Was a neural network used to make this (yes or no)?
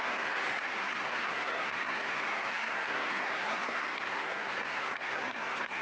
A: yes